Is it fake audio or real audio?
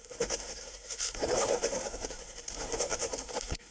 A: fake